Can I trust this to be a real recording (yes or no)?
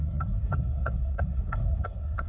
no